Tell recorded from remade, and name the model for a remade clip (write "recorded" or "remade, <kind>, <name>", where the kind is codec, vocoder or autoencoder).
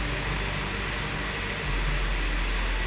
recorded